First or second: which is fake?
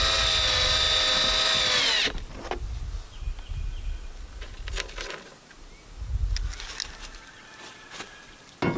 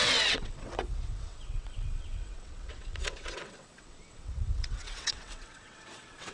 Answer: second